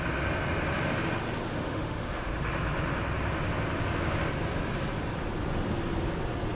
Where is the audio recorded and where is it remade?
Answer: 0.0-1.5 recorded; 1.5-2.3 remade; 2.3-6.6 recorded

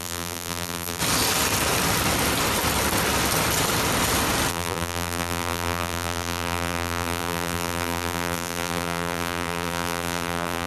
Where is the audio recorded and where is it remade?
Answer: 0.0-1.0 remade; 1.0-4.5 recorded; 4.5-10.7 remade

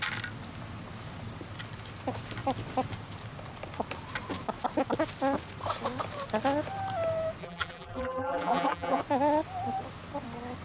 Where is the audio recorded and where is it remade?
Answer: 0.0-7.4 recorded; 7.4-9.0 remade; 9.0-10.6 recorded

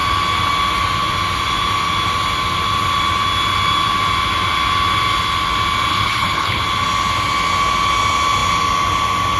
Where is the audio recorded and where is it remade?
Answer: 0.0-5.9 recorded; 5.9-6.6 remade; 6.6-9.4 recorded

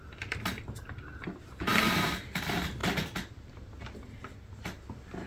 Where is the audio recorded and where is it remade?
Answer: 0.0-5.3 recorded

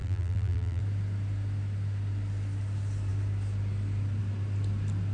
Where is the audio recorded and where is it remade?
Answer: 0.0-0.8 remade; 0.8-5.1 recorded

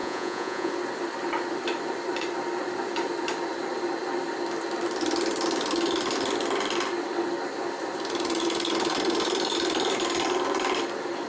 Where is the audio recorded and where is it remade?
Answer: 0.0-0.7 remade; 0.7-11.3 recorded